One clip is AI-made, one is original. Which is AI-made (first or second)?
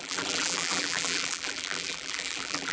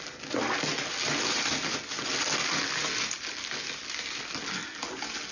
first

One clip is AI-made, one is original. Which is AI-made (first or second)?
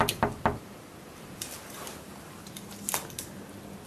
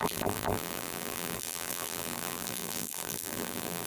second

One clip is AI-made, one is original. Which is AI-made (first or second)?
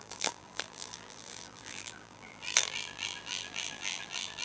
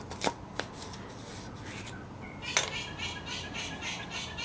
first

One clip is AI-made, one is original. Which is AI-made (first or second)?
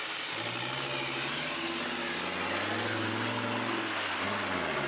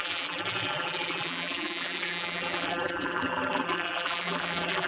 second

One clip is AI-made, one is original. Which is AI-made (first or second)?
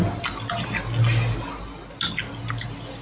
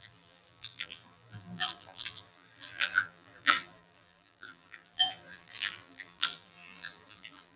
second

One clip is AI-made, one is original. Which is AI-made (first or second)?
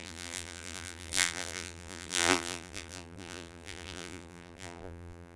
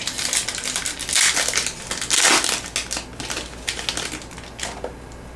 first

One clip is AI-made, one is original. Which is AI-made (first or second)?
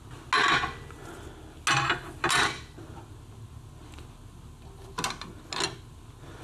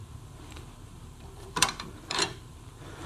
second